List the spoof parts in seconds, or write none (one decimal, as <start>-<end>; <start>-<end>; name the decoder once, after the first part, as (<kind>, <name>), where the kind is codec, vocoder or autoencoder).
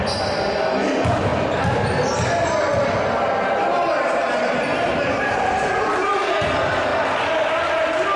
4.7-6.5 (vocoder, BigVGAN v2)